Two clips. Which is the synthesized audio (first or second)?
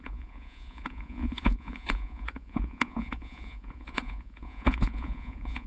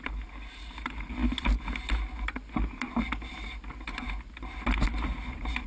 first